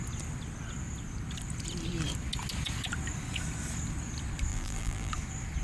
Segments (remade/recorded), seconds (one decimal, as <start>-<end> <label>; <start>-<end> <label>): 0.0-4.5 recorded; 4.5-5.1 remade; 5.1-5.6 recorded